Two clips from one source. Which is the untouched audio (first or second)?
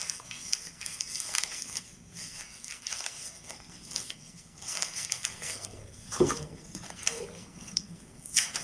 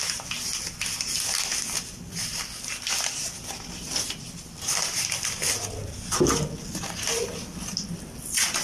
second